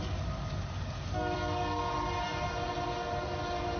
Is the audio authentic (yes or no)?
yes